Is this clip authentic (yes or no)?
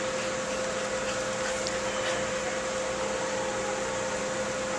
yes